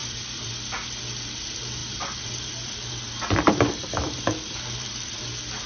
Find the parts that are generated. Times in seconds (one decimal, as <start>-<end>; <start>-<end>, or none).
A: 0.0-0.5; 1.8-5.2